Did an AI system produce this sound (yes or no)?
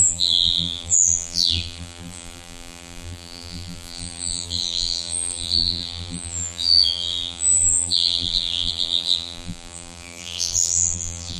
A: yes